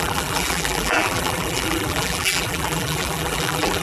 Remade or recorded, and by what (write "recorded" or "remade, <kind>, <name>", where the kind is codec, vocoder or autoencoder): remade, vocoder, BigVGAN v2